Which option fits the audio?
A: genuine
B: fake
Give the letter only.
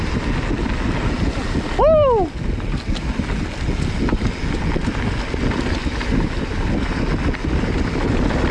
A